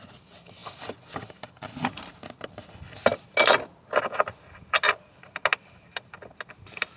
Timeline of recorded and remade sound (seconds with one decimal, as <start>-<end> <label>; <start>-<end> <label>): 0.0-7.0 recorded